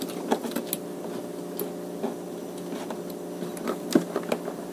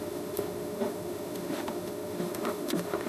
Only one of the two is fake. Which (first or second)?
second